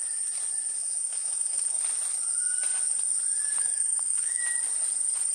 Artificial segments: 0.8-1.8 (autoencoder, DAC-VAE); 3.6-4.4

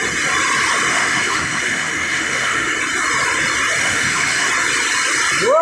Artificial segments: 0.9-2.7 (autoencoder, DAC-VAE); 3.8-4.5